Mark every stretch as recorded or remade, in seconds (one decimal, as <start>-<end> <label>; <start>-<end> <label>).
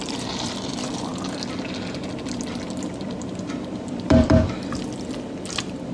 0.0-1.1 remade; 1.1-2.9 recorded; 2.9-5.9 remade